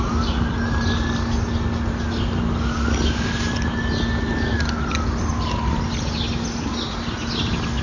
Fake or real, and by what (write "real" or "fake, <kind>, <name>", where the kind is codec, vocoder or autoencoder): real